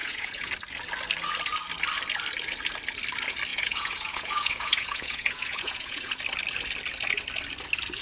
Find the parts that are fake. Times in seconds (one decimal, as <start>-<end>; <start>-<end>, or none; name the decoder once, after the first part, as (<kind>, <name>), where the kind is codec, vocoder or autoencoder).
0.0-0.5 (vocoder, Vocos); 3.5-6.2